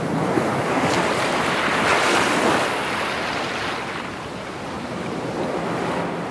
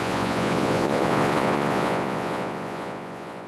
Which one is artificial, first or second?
second